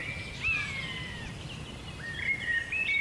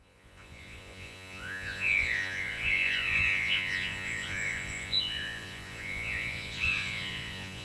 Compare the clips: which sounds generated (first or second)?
second